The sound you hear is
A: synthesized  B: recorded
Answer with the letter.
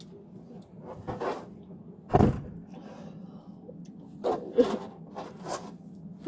B